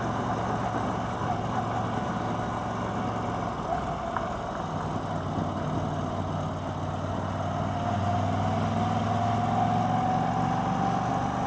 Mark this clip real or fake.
real